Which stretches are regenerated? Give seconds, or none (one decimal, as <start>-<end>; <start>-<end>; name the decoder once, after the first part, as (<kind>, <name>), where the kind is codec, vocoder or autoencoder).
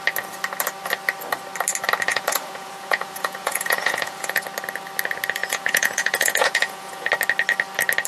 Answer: 2.1-4.4 (vocoder, Vocos); 5.4-7.1